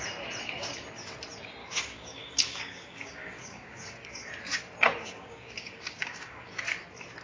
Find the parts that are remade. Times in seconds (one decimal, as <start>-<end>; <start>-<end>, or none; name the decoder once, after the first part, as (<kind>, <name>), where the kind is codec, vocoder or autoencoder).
1.6-4.3 (codec, DAC); 5.0-6.6